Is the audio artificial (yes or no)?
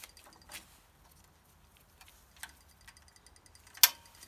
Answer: no